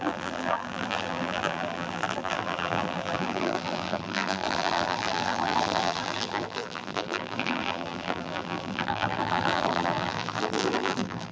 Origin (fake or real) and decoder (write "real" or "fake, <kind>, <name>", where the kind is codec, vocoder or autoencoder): fake, vocoder, BigVGAN v2